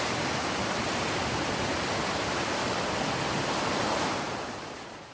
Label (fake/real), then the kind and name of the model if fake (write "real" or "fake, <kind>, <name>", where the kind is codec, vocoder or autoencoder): real